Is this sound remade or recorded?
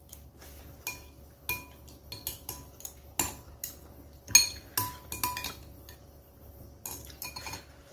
recorded